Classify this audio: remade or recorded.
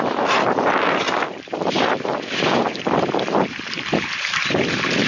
remade